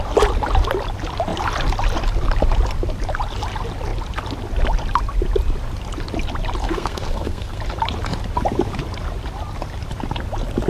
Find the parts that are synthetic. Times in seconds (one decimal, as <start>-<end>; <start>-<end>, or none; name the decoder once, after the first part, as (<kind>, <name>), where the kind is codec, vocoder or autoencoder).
6.6-7.6 (codec, SNAC)